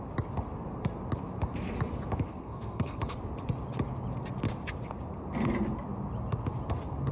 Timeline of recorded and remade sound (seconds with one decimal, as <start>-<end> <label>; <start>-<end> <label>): 0.0-2.3 recorded; 2.3-3.0 remade; 3.0-7.1 recorded